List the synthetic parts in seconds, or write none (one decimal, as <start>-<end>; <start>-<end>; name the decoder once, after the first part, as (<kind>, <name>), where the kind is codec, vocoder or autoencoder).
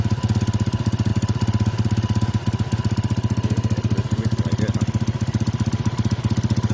none